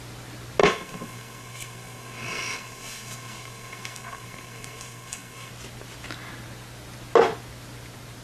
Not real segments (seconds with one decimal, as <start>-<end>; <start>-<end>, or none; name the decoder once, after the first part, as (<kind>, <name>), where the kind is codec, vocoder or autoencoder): 0.6-5.5 (codec, SNAC)